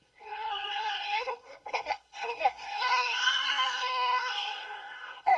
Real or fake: fake